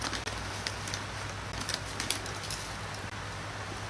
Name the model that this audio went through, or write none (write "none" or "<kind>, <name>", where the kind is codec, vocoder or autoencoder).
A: none